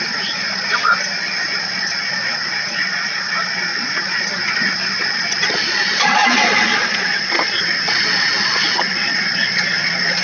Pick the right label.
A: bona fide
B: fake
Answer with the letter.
B